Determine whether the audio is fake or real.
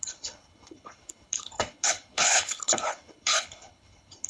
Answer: fake